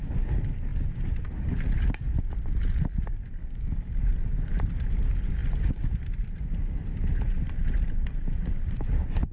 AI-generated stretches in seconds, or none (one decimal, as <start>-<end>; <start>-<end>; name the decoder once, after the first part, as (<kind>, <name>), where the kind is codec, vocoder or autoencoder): 3.4-4.0 (codec, DAC)